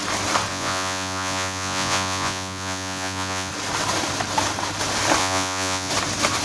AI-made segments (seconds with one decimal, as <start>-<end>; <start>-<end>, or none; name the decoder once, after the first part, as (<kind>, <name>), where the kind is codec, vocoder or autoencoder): 0.5-3.5 (vocoder, Vocos); 5.2-5.9